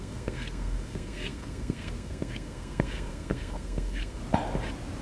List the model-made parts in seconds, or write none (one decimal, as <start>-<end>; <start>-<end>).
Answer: 0.0-4.2